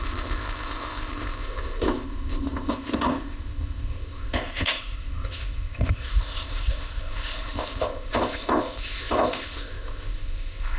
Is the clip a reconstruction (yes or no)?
yes